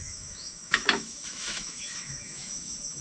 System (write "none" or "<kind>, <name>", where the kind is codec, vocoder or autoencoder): autoencoder, DAC-VAE